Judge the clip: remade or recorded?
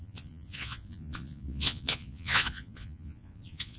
remade